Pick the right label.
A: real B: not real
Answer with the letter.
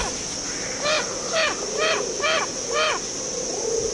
A